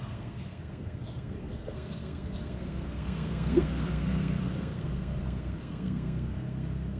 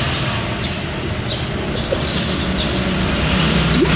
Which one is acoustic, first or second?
second